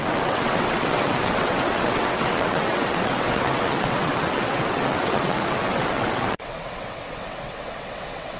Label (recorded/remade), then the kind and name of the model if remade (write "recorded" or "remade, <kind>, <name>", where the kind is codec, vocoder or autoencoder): remade, vocoder, WaveNeXt